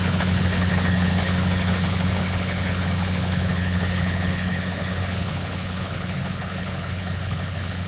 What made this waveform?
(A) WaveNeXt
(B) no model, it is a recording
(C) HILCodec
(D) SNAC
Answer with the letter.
C